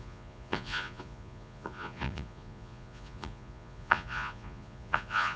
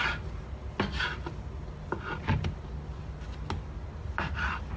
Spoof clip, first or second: first